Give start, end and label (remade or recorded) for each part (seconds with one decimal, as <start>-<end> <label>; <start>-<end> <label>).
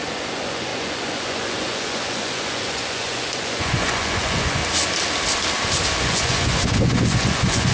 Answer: 0.0-4.6 remade; 4.6-6.0 recorded; 6.0-7.7 remade